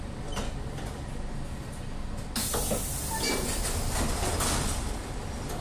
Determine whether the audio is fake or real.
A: real